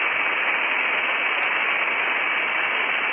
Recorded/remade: recorded